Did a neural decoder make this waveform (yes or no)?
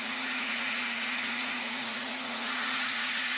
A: yes